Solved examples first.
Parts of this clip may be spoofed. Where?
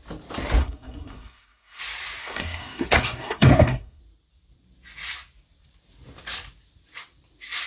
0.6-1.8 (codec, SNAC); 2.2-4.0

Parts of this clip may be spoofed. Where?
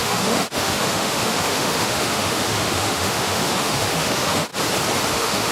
0.0-4.5 (autoencoder, DAC-VAE); 5.1-5.5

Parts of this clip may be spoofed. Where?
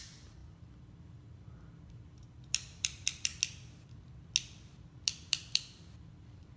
0.0-0.4 (vocoder, BigVGAN v2); 2.4-3.3; 5.3-6.6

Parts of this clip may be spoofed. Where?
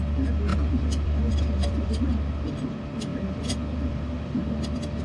0.5-2.1 (vocoder, BigVGAN v2); 3.1-4.4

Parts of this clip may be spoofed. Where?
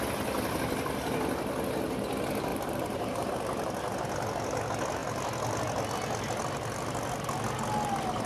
2.5-3.3 (vocoder, BigVGAN v2)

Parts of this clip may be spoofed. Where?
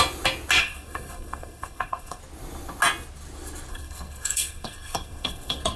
0.6-2.2 (codec, SNAC); 3.7-5.8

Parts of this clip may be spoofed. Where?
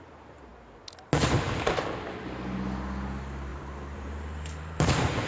3.5-5.3 (vocoder, BigVGAN v2)